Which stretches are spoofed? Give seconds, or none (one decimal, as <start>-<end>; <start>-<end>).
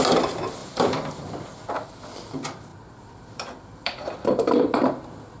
0.6-1.7; 2.7-4.6